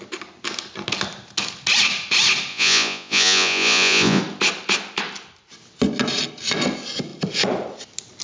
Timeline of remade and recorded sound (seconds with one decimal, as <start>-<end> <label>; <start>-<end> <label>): 0.0-2.5 recorded; 2.5-4.2 remade; 4.2-8.2 recorded